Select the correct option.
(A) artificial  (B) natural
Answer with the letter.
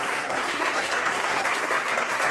A